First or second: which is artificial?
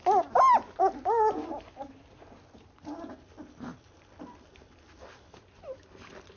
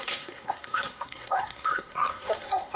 second